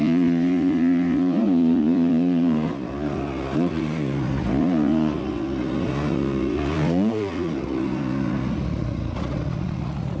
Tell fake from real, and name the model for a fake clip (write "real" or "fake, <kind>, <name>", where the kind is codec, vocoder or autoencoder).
fake, vocoder, Vocos